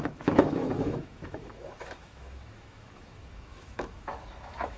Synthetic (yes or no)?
yes